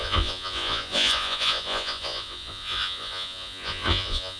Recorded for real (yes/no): no